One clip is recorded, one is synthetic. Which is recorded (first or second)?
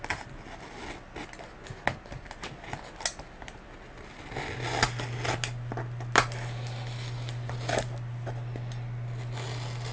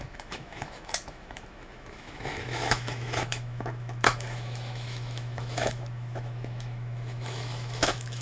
first